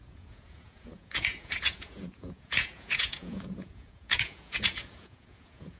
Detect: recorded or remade remade